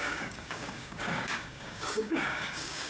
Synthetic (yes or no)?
yes